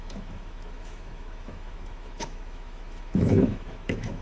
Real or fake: fake